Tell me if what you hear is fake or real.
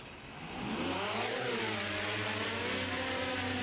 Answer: real